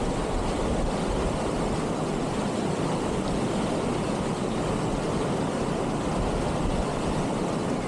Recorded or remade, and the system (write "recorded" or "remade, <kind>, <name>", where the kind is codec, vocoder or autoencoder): recorded